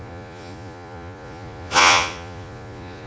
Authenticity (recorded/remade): remade